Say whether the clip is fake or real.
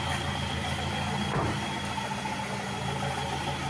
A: real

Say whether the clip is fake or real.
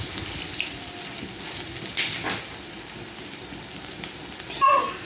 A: real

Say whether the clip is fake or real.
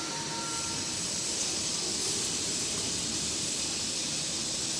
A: real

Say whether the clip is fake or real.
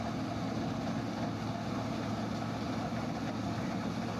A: real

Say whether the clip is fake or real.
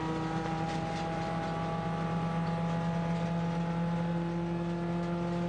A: real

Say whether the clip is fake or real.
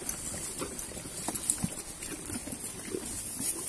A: real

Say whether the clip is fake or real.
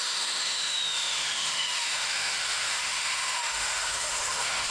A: fake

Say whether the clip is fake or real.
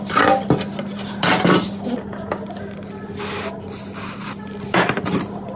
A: real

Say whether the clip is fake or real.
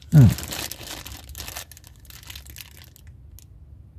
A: real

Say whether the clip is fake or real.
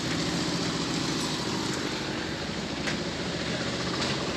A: real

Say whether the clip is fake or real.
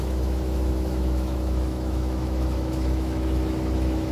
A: fake